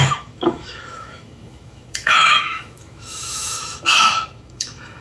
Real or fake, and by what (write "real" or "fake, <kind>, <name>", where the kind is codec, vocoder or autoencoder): fake, autoencoder, DAC-VAE